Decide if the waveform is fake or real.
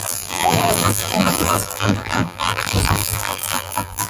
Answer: fake